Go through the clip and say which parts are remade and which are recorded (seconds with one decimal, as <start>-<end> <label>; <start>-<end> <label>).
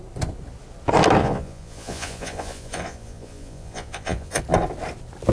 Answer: 0.0-1.2 recorded; 1.2-4.4 remade; 4.4-5.3 recorded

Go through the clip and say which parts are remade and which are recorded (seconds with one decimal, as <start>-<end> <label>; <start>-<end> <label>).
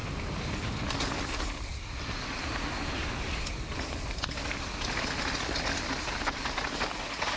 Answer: 0.0-7.4 recorded